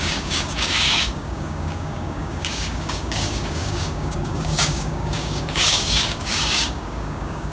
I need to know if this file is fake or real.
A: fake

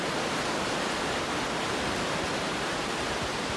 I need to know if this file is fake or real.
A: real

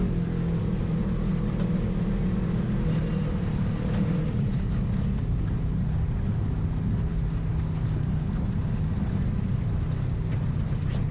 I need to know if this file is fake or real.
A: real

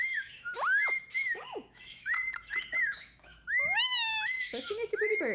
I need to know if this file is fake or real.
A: fake